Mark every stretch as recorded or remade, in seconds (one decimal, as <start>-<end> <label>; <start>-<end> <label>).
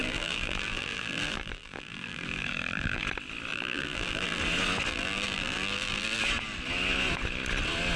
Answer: 0.0-3.0 remade; 3.0-3.5 recorded; 3.5-4.4 remade; 4.4-4.9 recorded; 4.9-6.2 remade; 6.2-8.0 recorded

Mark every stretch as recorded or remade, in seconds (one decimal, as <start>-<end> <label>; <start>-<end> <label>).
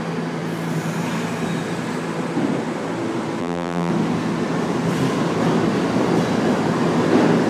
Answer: 0.0-3.4 recorded; 3.4-3.9 remade; 3.9-7.5 recorded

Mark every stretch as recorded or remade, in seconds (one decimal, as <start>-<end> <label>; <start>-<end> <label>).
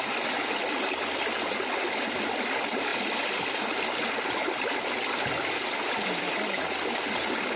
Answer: 0.0-7.6 recorded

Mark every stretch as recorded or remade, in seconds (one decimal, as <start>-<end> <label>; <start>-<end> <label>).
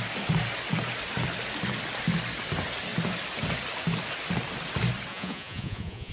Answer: 0.0-5.1 recorded; 5.1-6.1 remade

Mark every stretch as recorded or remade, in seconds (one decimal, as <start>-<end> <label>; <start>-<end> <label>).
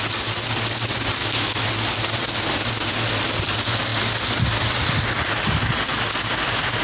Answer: 0.0-1.2 recorded; 1.2-1.7 remade; 1.7-6.8 recorded